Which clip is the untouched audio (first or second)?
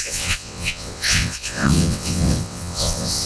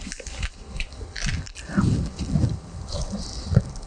second